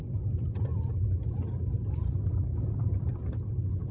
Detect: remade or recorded remade